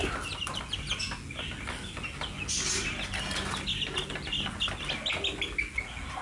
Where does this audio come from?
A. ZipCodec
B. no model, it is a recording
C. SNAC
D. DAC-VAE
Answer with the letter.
B